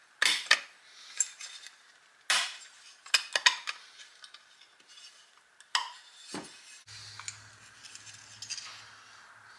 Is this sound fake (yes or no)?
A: no